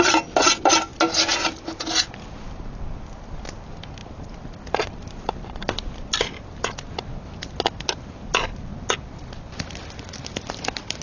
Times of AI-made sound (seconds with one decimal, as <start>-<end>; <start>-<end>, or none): none